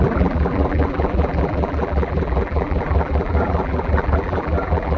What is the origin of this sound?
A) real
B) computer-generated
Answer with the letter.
B